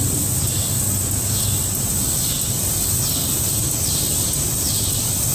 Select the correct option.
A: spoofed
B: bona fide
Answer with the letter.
B